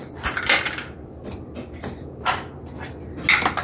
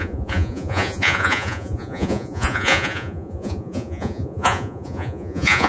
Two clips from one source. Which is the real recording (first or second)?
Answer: first